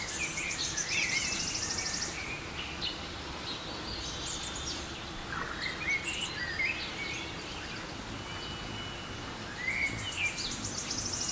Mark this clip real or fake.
real